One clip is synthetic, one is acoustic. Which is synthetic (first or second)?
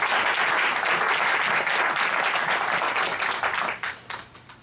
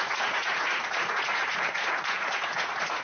second